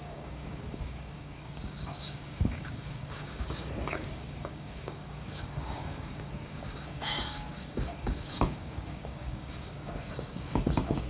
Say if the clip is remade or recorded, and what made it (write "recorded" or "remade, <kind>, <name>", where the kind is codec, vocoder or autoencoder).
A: remade, codec, DAC